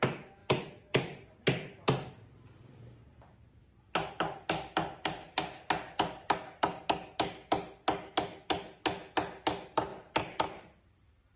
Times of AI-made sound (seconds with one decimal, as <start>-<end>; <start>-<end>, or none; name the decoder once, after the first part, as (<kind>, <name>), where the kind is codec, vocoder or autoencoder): 0.4-2.8 (vocoder, BigVGAN v2); 3.6-6.8; 9.9-11.0